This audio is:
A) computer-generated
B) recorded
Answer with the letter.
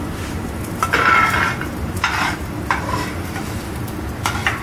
B